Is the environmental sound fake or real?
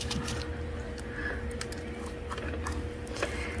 real